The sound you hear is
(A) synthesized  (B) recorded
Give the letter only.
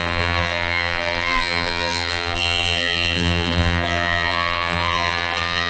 A